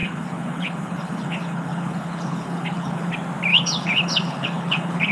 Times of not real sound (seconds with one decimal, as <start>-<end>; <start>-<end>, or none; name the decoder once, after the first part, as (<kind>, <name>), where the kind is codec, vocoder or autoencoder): 0.0-3.1 (codec, HILCodec); 3.5-5.1